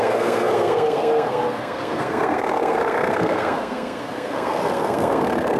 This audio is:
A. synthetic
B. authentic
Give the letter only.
A